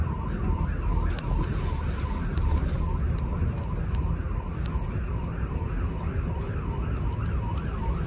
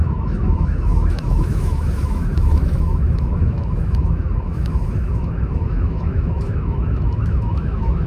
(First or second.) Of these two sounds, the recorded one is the first